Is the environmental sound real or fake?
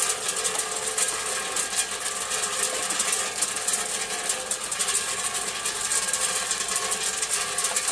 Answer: real